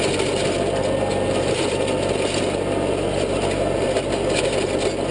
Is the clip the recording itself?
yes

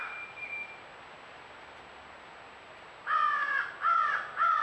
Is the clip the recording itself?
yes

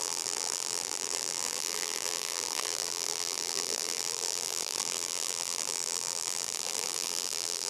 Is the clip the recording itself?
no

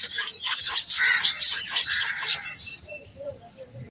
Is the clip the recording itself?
no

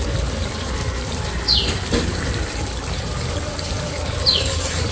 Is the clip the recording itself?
no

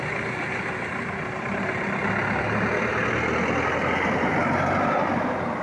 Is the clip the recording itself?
yes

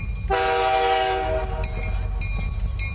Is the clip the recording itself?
yes